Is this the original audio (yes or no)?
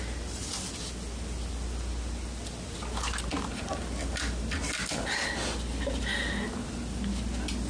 yes